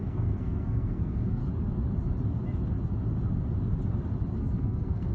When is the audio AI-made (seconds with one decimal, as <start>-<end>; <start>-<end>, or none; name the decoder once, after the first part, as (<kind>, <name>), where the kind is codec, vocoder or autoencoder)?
0.0-1.4 (codec, SNAC); 4.4-5.1

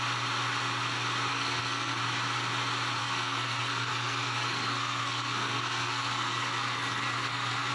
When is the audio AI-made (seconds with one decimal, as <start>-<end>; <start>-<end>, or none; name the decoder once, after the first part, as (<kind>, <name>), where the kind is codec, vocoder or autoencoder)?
1.3-2.0 (codec, SNAC); 3.0-7.7

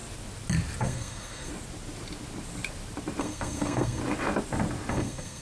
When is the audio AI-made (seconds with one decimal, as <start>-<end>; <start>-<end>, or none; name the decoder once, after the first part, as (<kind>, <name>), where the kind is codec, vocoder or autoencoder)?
0.8-1.5 (codec, SNAC); 3.2-4.0; 4.9-5.4

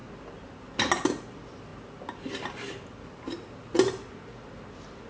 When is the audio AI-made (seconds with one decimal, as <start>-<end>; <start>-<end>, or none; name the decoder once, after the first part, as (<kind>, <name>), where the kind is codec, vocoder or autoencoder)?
none

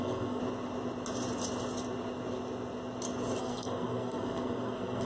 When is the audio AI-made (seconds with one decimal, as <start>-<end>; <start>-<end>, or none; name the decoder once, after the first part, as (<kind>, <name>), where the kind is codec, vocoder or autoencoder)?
0.0-0.4 (codec, SNAC); 3.4-5.0